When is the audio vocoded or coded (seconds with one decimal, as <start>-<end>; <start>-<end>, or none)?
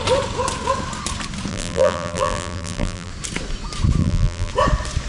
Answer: 1.5-3.1; 4.0-4.5